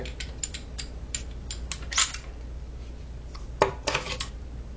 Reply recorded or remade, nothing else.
recorded